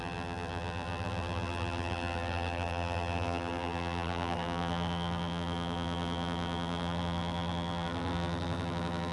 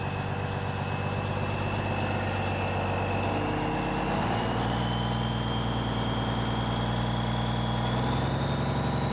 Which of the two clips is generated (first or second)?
first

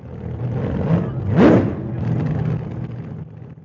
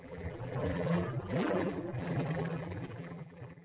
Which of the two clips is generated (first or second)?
second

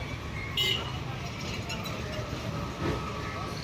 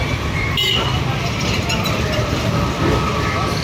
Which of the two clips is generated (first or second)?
second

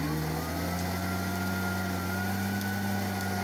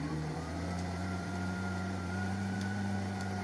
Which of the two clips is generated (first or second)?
second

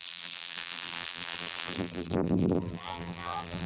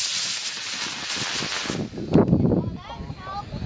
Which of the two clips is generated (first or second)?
first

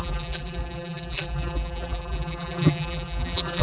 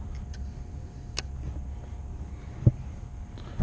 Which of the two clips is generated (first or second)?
first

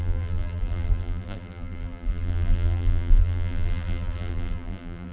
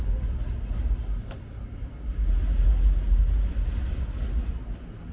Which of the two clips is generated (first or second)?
first